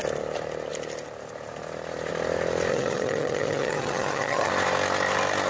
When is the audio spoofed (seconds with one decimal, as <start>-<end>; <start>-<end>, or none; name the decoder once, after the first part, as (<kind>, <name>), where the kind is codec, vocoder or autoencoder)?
2.7-4.5 (vocoder, HiFi-GAN)